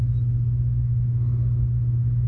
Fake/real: real